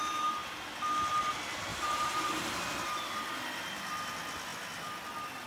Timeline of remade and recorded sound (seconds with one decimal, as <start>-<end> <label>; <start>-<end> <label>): 0.0-1.7 recorded; 1.7-2.6 remade; 2.6-5.5 recorded